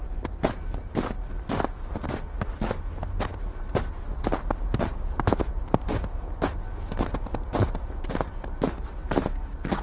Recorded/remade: recorded